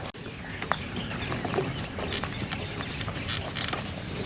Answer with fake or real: real